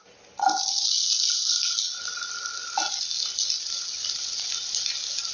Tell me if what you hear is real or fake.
real